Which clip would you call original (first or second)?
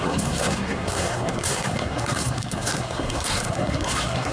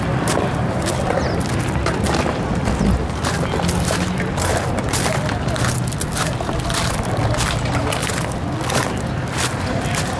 second